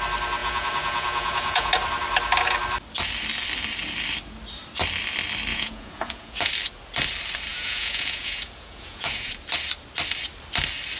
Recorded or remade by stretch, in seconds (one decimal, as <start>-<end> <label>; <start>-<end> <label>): 0.0-0.4 recorded; 0.4-1.7 remade; 1.7-5.5 recorded; 5.5-6.5 remade; 6.5-7.5 recorded; 7.5-9.3 remade; 9.3-11.0 recorded